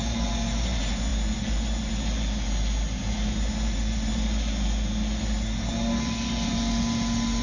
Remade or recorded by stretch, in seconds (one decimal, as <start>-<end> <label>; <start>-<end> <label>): 0.0-7.4 recorded